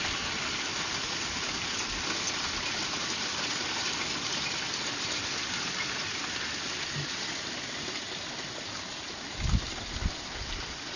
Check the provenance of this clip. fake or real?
real